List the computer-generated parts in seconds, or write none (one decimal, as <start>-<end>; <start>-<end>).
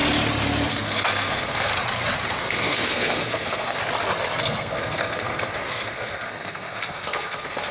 0.7-1.7; 2.4-3.8; 4.4-7.7